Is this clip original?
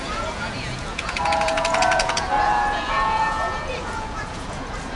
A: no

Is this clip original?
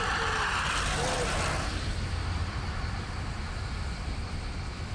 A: yes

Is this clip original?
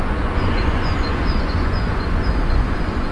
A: no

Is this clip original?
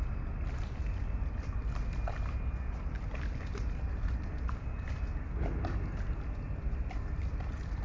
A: yes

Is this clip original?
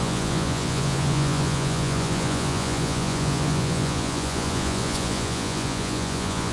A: no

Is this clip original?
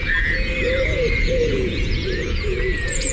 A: no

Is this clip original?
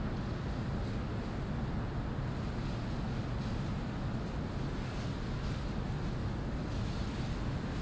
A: yes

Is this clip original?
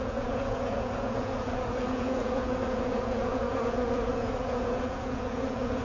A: no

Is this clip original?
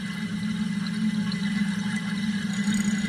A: yes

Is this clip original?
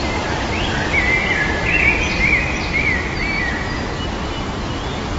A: yes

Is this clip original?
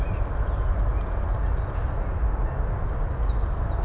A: yes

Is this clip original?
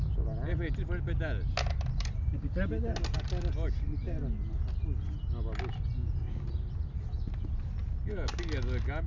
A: yes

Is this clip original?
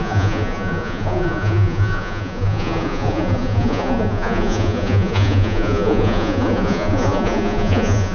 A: no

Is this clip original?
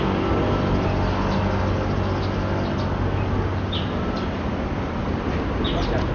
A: yes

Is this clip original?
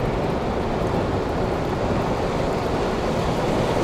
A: yes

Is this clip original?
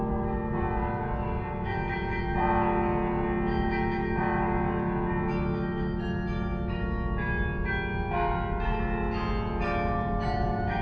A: yes